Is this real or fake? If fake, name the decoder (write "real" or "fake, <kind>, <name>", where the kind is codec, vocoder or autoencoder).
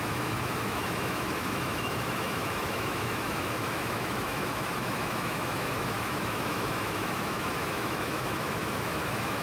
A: fake, autoencoder, DAC-VAE